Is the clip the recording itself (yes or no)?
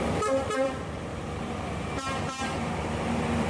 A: no